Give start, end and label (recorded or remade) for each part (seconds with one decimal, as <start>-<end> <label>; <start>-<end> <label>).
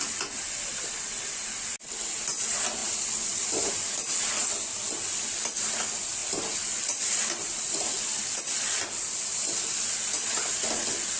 0.0-2.8 recorded; 2.8-4.3 remade; 4.3-6.2 recorded; 6.2-7.9 remade; 7.9-11.2 recorded